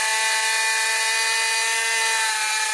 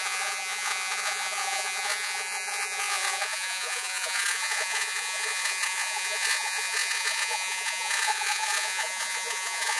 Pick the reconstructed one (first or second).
second